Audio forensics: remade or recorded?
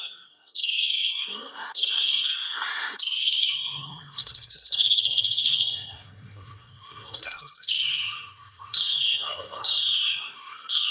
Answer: remade